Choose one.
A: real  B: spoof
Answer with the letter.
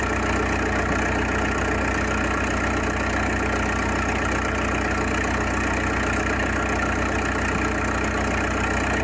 A